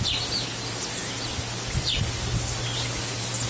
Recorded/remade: recorded